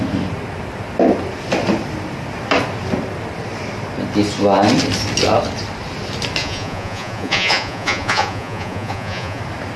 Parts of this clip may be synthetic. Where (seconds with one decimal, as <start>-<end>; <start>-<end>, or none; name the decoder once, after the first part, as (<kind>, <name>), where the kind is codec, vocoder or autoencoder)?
6.4-9.4 (vocoder, Vocos)